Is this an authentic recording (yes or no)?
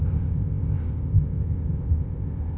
no